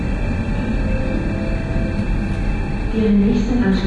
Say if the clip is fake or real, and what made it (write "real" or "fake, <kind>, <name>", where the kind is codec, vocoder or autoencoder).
real